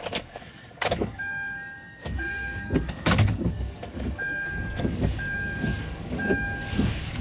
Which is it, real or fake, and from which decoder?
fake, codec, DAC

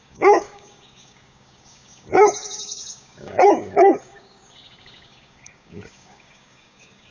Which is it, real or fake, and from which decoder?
fake, codec, DAC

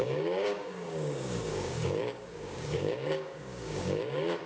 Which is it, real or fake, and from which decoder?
fake, codec, DAC